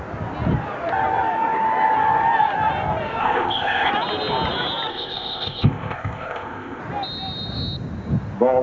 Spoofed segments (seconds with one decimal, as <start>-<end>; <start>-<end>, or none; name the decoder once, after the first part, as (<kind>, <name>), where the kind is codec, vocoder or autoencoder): 3.2-3.9 (codec, ZipCodec); 4.9-6.8